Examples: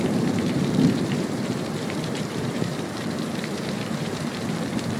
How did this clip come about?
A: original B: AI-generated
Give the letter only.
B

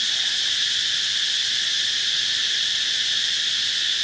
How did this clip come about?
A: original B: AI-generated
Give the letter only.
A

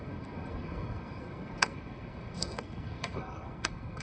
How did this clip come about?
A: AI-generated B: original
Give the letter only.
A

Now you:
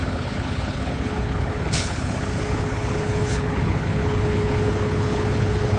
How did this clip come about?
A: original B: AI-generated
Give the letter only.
B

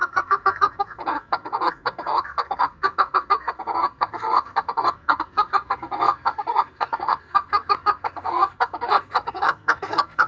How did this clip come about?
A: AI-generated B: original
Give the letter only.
A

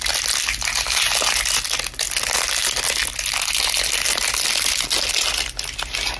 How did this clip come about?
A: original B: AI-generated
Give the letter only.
A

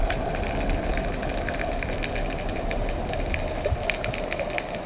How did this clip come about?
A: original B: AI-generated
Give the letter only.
A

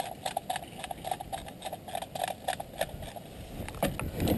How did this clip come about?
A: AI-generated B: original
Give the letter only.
B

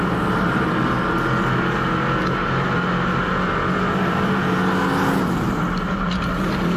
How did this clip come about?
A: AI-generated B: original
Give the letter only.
B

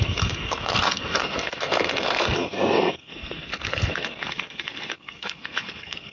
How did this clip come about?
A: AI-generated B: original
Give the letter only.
A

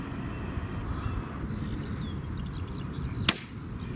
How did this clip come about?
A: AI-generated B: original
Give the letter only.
B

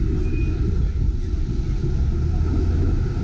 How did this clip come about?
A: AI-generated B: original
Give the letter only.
B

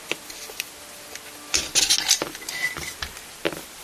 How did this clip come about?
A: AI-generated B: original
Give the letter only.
B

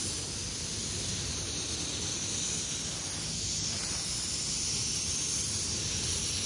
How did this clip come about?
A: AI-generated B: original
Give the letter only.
B